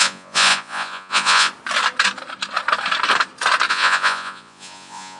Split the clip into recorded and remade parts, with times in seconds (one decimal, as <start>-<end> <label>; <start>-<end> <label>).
0.0-1.5 remade; 1.5-3.7 recorded; 3.7-5.2 remade